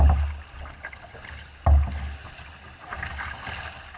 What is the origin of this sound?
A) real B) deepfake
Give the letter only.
A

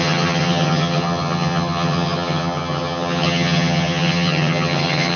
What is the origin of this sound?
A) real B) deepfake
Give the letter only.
B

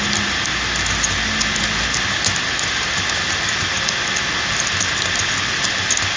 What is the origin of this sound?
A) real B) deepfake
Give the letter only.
A